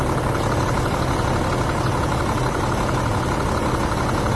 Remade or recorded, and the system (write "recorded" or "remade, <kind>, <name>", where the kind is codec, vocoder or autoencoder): recorded